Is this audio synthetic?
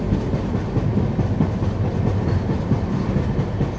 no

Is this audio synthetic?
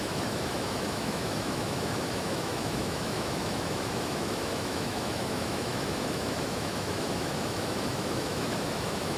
yes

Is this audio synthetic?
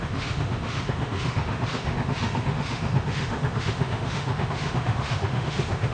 yes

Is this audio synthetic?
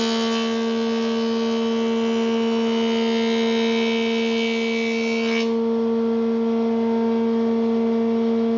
no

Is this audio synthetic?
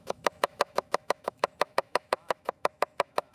yes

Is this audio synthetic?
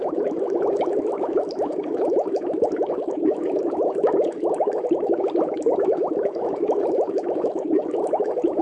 yes